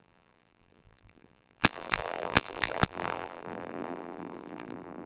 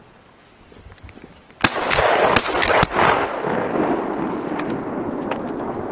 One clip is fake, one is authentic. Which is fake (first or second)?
first